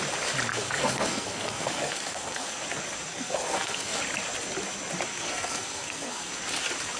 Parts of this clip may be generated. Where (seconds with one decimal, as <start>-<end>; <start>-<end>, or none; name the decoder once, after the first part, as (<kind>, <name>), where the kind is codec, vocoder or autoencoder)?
0.5-2.6 (codec, SNAC); 3.1-4.0; 5.1-6.3

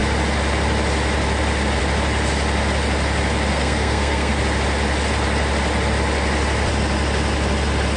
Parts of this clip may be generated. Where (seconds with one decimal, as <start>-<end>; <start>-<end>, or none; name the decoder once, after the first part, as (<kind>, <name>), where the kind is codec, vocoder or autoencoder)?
3.5-4.3 (codec, SNAC)